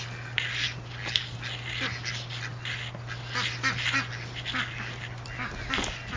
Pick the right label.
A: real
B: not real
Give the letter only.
A